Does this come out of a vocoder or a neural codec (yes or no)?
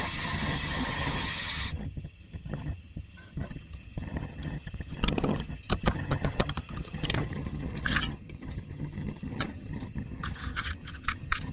yes